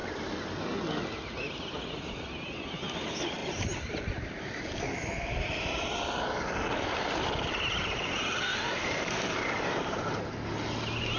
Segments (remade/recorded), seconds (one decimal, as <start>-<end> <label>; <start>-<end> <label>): 0.0-3.4 recorded; 3.4-6.0 remade; 6.0-8.5 recorded; 8.5-10.3 remade; 10.3-11.2 recorded

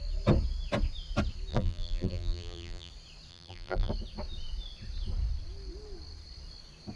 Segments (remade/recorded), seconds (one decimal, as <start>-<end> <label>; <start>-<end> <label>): 0.0-1.5 recorded; 1.5-2.9 remade; 2.9-3.3 recorded; 3.3-3.9 remade; 3.9-7.0 recorded

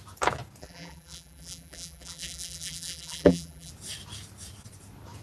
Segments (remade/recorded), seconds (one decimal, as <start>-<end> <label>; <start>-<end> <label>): 0.0-0.6 recorded; 0.6-3.7 remade; 3.7-5.2 recorded